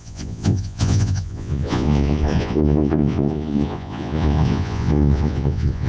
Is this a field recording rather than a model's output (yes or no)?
no